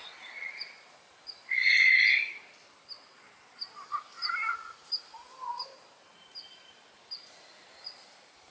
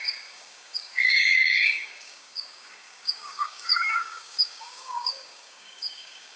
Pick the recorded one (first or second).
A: first